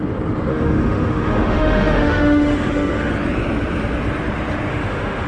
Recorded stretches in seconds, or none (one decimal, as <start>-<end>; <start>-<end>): 0.0-0.5; 3.1-4.7